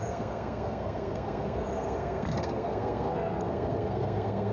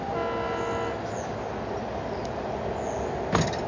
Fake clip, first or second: first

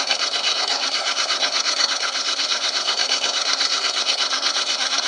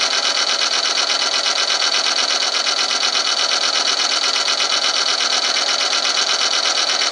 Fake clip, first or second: first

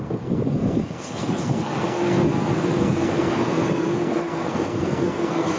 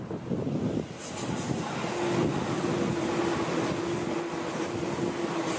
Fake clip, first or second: first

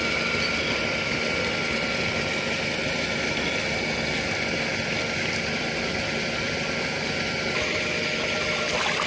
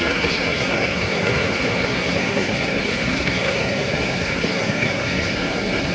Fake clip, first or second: second